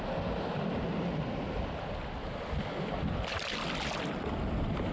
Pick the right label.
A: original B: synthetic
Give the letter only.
A